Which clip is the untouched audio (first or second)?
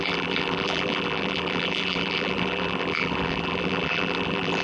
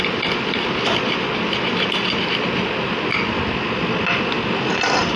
second